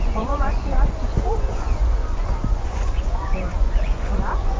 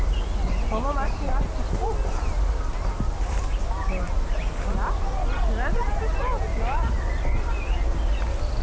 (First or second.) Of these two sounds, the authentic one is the second